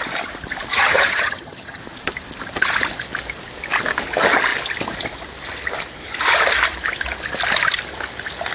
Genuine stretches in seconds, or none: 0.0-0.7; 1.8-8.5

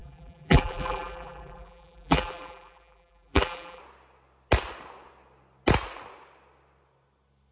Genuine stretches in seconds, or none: 3.8-7.5

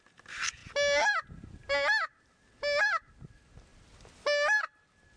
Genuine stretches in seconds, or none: 0.0-5.2

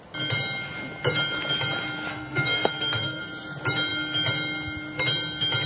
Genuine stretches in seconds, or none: 0.0-2.1; 3.2-5.7

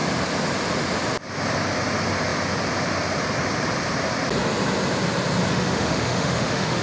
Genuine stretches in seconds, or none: 0.0-5.5